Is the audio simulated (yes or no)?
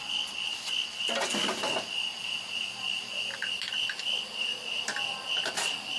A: no